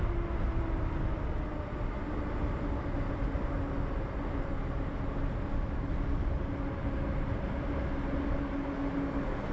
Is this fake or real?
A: real